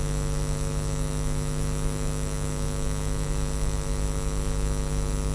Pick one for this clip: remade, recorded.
remade